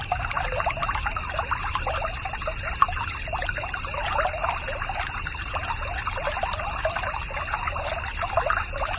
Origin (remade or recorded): recorded